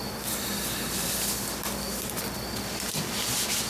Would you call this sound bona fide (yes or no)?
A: yes